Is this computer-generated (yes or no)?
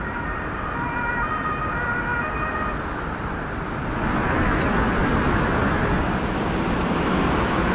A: no